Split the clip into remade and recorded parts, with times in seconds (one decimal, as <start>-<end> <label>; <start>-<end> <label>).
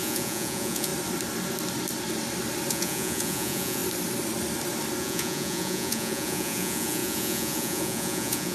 0.0-0.9 remade; 0.9-2.7 recorded; 2.7-3.8 remade; 3.8-5.0 recorded; 5.0-8.5 remade